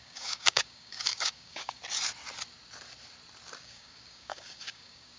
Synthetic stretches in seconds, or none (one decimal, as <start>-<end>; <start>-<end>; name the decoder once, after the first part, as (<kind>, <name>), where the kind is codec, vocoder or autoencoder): 0.0-1.8 (codec, DAC); 3.6-5.2